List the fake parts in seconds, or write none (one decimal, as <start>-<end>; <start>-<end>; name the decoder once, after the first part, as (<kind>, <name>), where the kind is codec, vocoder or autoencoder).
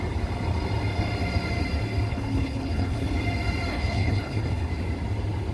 2.1-3.1 (codec, HILCodec); 3.7-4.7